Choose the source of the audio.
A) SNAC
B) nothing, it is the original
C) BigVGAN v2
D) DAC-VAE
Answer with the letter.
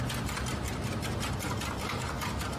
B